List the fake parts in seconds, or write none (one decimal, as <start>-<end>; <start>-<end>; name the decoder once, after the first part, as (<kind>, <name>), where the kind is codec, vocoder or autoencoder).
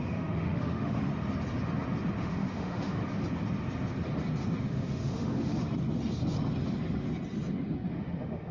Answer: 0.0-1.1 (autoencoder, DAC-VAE); 2.2-3.0; 4.6-5.6; 7.9-8.5